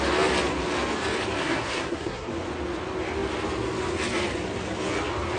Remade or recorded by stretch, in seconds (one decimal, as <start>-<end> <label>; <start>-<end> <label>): 0.0-1.4 recorded; 1.4-2.3 remade; 2.3-5.4 recorded